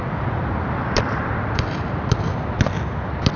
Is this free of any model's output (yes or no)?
no